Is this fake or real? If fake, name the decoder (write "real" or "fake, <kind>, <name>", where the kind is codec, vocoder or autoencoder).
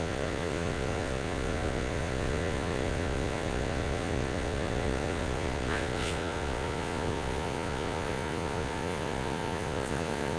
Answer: fake, vocoder, Vocos